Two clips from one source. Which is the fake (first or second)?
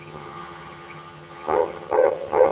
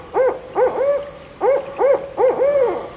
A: first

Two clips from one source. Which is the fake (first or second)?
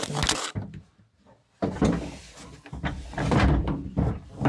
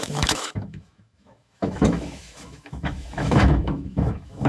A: second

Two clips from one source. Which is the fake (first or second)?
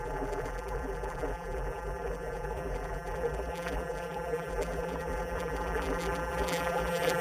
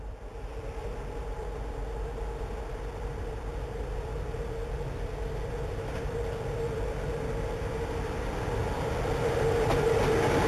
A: first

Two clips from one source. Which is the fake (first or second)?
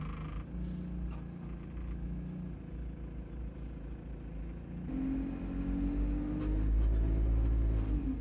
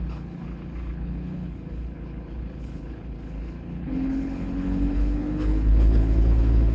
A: second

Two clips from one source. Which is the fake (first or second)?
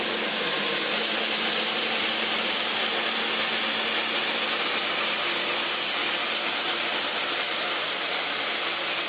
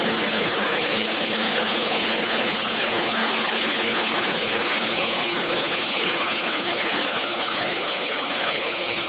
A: second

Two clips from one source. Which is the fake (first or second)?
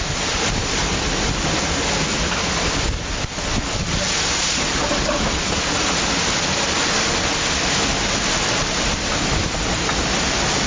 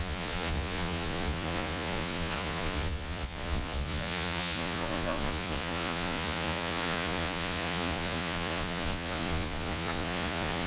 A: second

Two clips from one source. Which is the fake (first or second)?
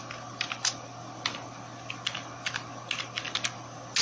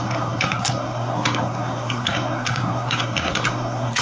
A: second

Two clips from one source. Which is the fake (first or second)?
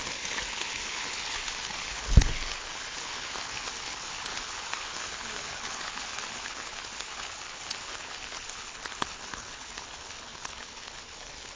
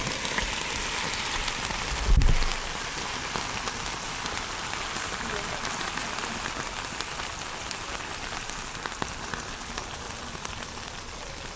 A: first